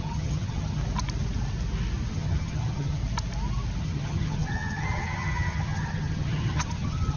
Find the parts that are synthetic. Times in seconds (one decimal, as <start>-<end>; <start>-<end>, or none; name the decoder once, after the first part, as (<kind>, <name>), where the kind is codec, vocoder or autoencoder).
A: 0.0-0.8 (vocoder, HiFi-GAN); 2.1-3.0; 3.8-7.2